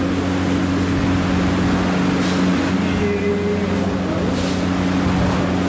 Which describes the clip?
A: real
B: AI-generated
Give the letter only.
A